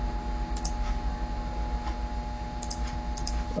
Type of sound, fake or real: real